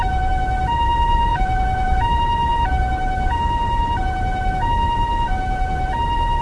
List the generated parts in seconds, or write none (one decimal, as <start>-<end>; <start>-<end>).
1.3-2.1